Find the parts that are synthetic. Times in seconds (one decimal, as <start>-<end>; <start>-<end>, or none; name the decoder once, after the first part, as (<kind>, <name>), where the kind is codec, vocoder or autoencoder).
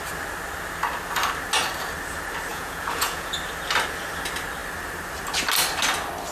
2.5-3.3 (vocoder, Vocos)